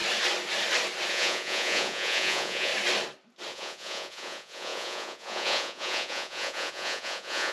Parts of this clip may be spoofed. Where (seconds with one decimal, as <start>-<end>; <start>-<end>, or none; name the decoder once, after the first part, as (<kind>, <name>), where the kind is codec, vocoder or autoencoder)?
1.1-2.7 (vocoder, Vocos); 3.5-7.5